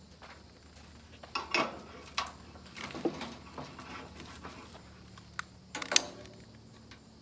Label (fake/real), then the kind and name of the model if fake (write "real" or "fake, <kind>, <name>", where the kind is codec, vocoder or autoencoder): real